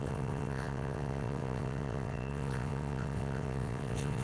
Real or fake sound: fake